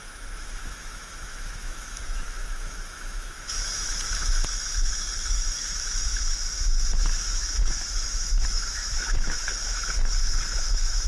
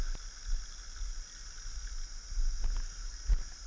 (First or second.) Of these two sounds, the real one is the second